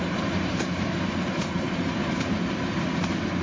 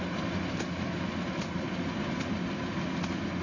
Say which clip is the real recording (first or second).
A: second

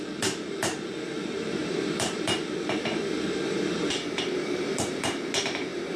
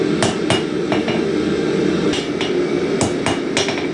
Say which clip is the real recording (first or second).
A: second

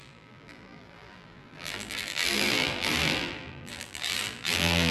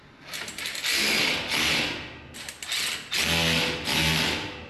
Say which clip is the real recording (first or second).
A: second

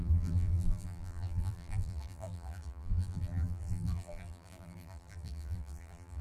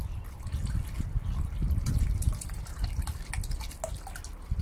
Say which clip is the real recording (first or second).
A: second